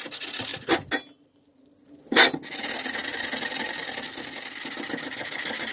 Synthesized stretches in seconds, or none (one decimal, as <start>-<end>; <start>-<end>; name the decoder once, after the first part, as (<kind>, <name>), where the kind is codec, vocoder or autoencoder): none